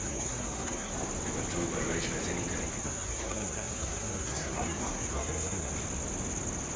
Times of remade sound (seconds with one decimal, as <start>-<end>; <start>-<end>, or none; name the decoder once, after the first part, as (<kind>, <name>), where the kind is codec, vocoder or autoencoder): 0.0-0.9 (codec, SNAC); 2.8-5.7